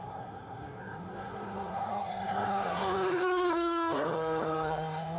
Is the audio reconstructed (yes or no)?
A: yes